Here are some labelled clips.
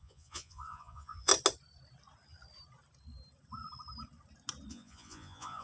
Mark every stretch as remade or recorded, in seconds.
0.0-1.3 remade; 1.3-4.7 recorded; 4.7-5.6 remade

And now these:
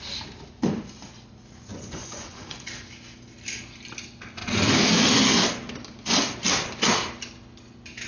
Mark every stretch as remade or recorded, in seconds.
0.0-1.7 recorded; 1.7-2.7 remade; 2.7-8.1 recorded

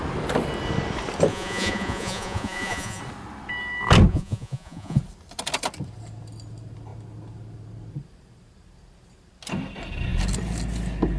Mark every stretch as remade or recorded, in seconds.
0.0-1.3 recorded; 1.3-3.0 remade; 3.0-4.1 recorded; 4.1-5.0 remade; 5.0-11.2 recorded

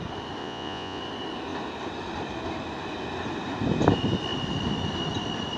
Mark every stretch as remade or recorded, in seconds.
0.0-0.4 recorded; 0.4-1.0 remade; 1.0-5.6 recorded